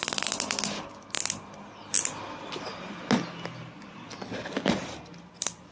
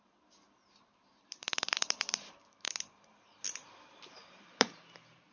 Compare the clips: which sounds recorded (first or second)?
first